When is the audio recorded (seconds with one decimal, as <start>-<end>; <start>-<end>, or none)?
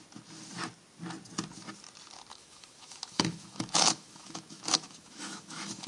0.0-2.3